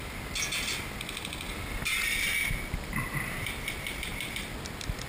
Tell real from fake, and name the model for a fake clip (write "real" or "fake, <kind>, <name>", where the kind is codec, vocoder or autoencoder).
real